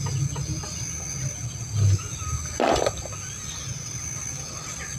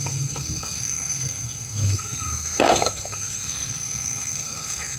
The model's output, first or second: second